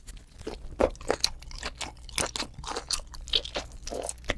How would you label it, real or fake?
real